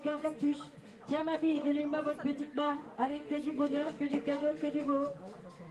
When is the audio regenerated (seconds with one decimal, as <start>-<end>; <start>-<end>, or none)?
0.0-1.8; 2.4-5.7